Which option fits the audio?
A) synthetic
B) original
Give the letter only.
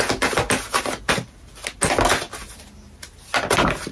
B